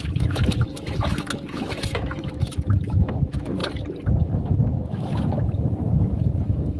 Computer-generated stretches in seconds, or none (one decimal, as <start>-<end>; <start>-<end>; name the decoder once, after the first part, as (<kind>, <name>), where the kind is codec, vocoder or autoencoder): 0.0-3.6 (autoencoder, DAC-VAE); 4.2-6.8